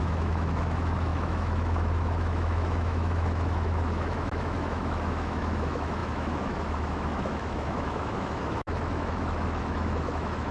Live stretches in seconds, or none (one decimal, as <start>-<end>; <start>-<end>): none